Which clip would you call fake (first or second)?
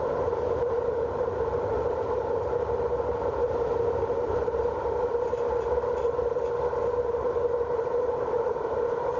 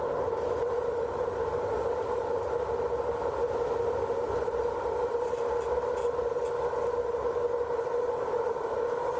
first